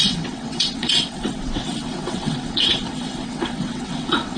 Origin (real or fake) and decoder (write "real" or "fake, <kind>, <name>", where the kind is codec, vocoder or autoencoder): fake, vocoder, WaveNeXt